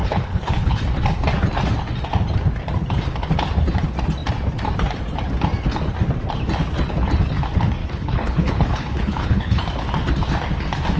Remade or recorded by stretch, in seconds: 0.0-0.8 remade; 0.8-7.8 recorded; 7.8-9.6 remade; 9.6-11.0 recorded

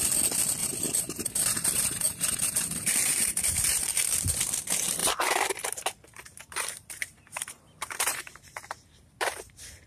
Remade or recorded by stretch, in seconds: 0.0-0.6 recorded; 0.6-4.4 remade; 4.4-5.0 recorded; 5.0-9.9 remade

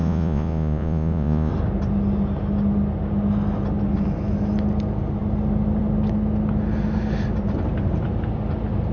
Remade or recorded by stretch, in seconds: 0.0-1.5 remade; 1.5-8.9 recorded

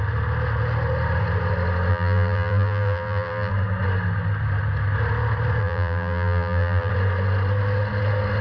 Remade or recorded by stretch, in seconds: 0.0-1.9 recorded; 1.9-3.5 remade; 3.5-5.6 recorded; 5.6-6.9 remade; 6.9-8.4 recorded